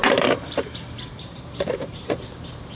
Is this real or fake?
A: fake